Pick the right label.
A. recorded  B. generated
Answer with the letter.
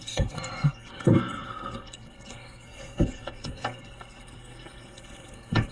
B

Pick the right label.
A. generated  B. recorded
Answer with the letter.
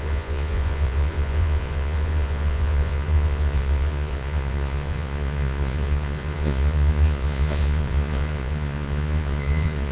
A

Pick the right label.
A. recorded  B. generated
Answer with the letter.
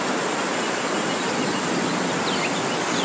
A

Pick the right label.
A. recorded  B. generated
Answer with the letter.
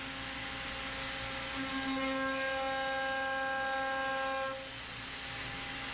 A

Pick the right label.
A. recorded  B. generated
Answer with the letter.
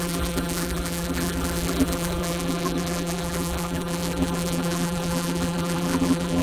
B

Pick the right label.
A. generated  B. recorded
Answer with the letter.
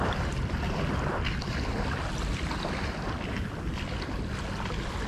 B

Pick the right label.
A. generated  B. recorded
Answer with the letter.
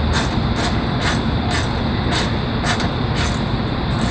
B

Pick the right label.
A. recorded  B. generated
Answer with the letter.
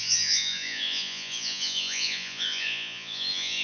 B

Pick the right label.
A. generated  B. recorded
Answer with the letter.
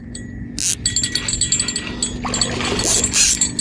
B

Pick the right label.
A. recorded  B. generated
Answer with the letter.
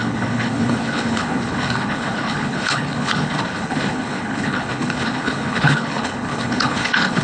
B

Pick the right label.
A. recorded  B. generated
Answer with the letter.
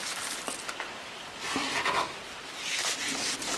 A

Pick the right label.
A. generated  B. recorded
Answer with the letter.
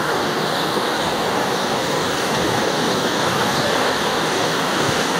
A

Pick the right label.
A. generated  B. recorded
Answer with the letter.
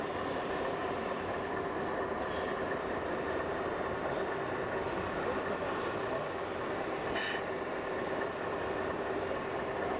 B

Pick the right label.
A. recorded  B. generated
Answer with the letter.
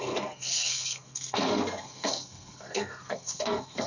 B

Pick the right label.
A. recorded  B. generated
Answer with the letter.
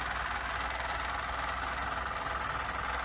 A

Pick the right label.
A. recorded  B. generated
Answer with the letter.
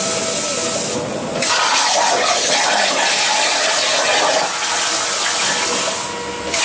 A